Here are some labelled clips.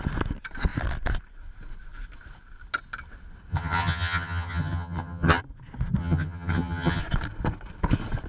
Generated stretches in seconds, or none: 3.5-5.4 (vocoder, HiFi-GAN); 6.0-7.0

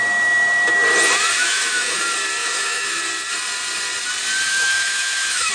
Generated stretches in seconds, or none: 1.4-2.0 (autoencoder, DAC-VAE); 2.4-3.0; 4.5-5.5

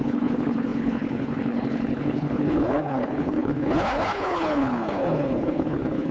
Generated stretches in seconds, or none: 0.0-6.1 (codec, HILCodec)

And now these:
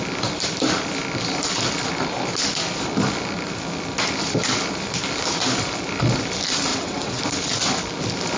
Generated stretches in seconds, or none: 6.7-7.2 (vocoder, WaveNeXt)

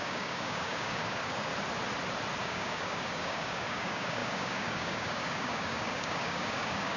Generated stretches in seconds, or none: 0.0-1.5 (codec, DAC); 2.4-7.0

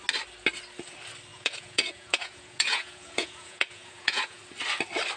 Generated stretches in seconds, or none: 1.3-4.4 (vocoder, Vocos)